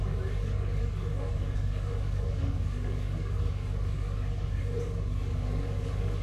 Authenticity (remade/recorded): remade